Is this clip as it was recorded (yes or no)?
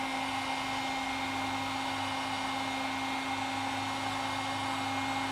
yes